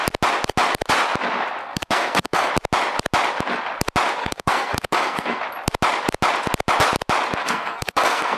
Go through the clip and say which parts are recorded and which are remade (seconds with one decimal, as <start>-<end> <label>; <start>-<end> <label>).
0.0-1.6 recorded; 1.6-2.5 remade; 2.5-4.2 recorded; 4.2-5.4 remade; 5.4-7.4 recorded; 7.4-8.4 remade